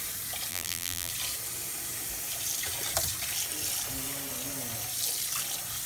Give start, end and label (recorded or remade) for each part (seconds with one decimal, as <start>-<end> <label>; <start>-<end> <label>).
0.0-0.5 recorded; 0.5-1.1 remade; 1.1-5.9 recorded